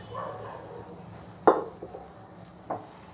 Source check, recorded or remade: recorded